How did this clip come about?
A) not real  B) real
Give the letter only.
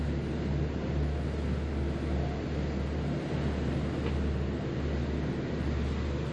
B